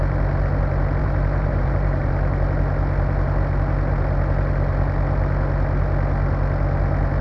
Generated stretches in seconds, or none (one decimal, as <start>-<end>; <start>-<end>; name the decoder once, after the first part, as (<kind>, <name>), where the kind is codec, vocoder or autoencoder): 1.0-2.1 (vocoder, BigVGAN v2)